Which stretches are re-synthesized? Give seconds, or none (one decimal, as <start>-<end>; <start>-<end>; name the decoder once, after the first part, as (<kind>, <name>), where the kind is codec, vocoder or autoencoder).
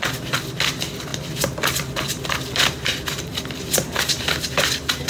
none